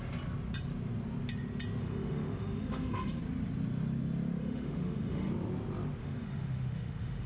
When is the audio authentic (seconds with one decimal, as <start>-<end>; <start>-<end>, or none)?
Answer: 0.0-1.8; 3.2-4.4; 5.3-6.0